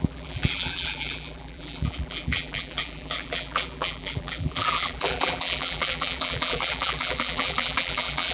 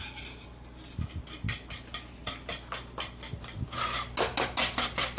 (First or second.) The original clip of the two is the second